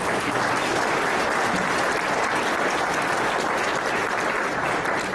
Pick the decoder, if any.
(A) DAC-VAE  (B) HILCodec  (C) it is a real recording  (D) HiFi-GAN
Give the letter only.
C